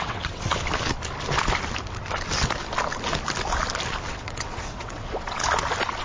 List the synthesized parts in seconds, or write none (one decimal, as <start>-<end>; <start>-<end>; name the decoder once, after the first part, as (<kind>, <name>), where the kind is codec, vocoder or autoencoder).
0.0-0.5 (vocoder, WaveNeXt); 4.1-5.4